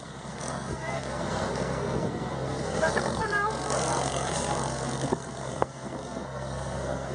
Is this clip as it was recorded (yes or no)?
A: no